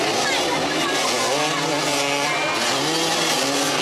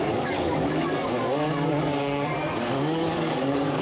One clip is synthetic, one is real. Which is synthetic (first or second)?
second